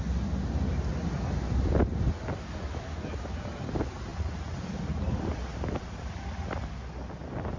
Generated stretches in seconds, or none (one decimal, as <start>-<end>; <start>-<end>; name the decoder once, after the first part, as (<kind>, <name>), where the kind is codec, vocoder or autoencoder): 4.1-6.2 (vocoder, BigVGAN v2)